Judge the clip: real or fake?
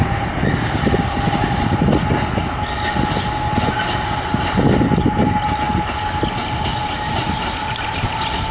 real